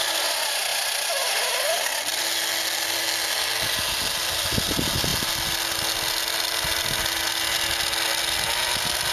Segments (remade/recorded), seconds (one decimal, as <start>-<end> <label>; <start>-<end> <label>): 0.0-9.1 recorded